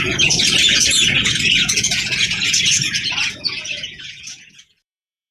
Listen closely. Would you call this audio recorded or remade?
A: remade